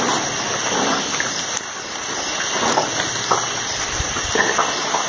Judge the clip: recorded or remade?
recorded